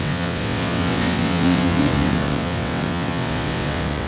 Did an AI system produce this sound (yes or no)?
yes